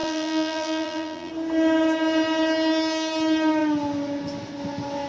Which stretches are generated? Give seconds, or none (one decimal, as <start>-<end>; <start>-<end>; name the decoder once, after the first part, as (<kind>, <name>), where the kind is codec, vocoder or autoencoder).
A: 0.0-1.3 (vocoder, BigVGAN v2)